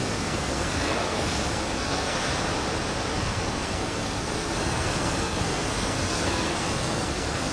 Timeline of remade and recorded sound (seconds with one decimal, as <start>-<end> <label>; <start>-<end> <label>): 0.0-2.3 remade; 2.3-3.1 recorded; 3.1-7.5 remade